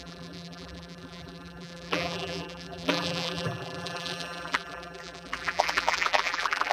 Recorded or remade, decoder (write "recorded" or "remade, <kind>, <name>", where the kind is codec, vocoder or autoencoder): remade, vocoder, BigVGAN v2